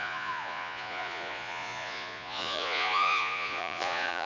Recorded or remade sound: remade